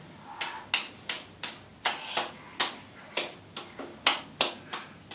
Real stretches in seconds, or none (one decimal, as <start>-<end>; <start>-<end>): 0.0-5.1

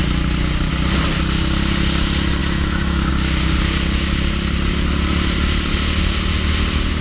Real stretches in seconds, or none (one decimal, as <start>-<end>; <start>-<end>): 0.0-2.4; 3.1-7.0

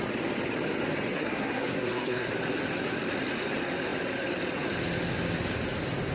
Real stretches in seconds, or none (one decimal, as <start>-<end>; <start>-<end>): 0.0-1.1; 2.3-6.1

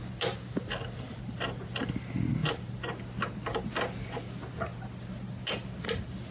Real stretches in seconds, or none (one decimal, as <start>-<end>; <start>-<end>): 0.0-6.3

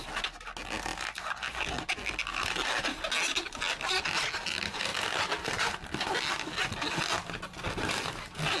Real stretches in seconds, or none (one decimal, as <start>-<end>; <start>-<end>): 0.0-8.6

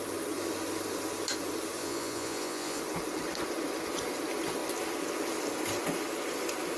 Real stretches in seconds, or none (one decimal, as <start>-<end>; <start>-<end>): 0.0-1.8; 2.8-6.8